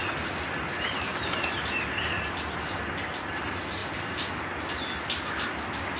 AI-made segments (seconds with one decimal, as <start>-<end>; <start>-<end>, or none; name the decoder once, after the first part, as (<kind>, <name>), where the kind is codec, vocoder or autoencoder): 1.1-2.2 (vocoder, BigVGAN v2)